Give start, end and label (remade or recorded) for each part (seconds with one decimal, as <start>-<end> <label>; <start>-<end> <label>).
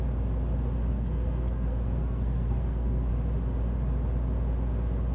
0.0-0.9 recorded; 0.9-3.1 remade; 3.1-5.1 recorded